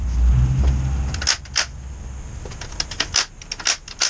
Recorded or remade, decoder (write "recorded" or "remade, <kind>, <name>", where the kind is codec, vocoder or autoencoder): recorded